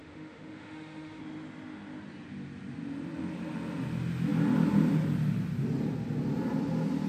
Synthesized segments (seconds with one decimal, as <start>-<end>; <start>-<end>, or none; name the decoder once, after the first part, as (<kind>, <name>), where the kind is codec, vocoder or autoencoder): 0.0-1.2 (autoencoder, DAC-VAE)